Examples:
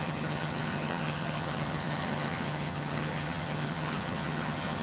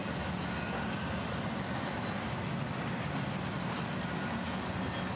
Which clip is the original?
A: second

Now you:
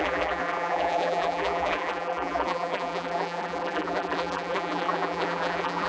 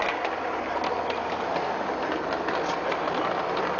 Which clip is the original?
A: second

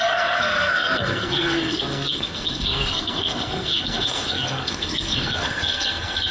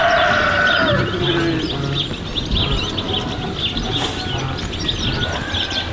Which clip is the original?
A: second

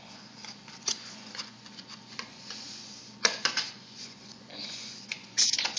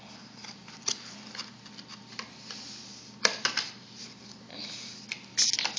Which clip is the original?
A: second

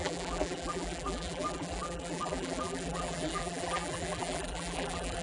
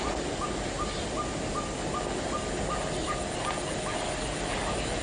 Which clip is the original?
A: second